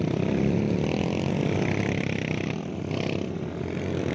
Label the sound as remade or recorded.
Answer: recorded